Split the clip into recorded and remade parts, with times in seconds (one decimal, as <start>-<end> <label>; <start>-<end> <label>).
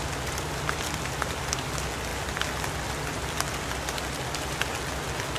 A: 0.0-5.4 recorded